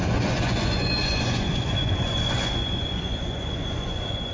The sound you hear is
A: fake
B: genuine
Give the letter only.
A